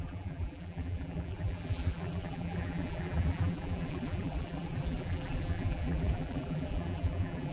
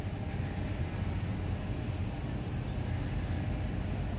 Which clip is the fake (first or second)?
first